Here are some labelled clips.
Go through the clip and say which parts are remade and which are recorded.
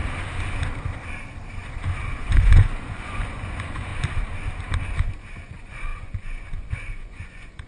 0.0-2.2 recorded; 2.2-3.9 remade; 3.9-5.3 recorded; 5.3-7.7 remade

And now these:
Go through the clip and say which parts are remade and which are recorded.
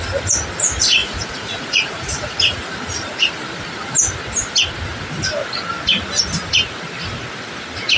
0.0-1.0 recorded; 1.0-2.7 remade; 2.7-8.0 recorded